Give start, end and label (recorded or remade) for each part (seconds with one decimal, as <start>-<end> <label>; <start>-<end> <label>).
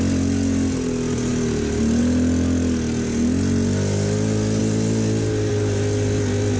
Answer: 0.0-6.6 recorded